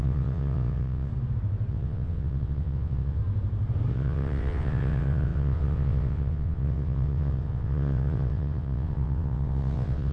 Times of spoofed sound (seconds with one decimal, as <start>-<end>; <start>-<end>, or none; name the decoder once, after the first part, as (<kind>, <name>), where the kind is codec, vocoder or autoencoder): 0.0-1.1 (vocoder, WaveNeXt); 1.7-3.2; 3.9-10.1